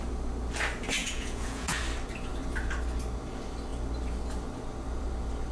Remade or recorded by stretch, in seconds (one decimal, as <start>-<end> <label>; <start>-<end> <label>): 0.0-1.0 recorded; 1.0-1.8 remade; 1.8-5.5 recorded